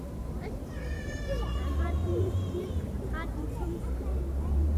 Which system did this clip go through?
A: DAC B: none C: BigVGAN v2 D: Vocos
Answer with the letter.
C